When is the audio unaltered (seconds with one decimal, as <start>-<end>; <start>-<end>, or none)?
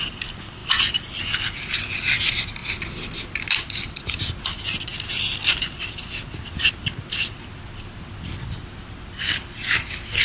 0.0-0.6; 1.2-2.6; 4.2-10.2